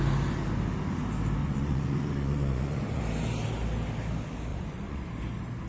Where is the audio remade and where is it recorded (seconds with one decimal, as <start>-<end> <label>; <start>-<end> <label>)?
0.0-1.4 recorded; 1.4-3.0 remade; 3.0-4.5 recorded; 4.5-5.1 remade; 5.1-5.7 recorded